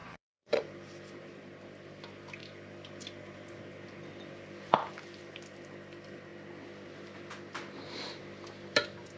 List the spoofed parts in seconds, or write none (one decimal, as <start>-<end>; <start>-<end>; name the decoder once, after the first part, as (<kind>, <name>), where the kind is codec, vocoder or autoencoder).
0.0-0.6 (vocoder, Vocos)